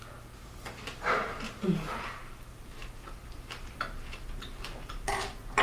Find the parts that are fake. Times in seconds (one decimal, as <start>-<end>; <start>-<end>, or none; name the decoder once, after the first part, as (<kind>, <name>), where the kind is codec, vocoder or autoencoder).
0.0-5.6 (vocoder, BigVGAN v2)